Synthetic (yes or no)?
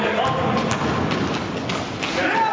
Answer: no